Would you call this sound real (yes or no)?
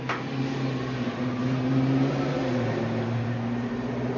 yes